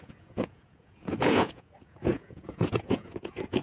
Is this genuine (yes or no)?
no